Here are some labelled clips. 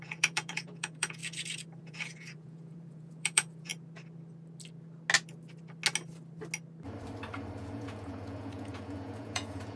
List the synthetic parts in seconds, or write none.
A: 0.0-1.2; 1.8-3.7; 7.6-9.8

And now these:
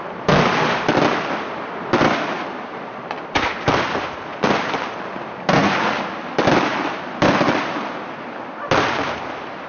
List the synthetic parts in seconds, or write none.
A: none

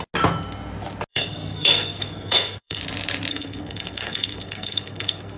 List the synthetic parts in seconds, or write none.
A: 1.1-2.8; 3.3-5.4

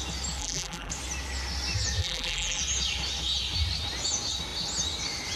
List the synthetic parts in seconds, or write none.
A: 0.4-0.9; 2.0-2.6

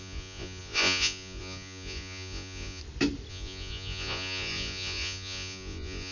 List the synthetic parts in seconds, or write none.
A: 0.0-2.8; 3.3-6.1